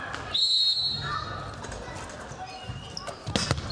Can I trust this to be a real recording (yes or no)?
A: yes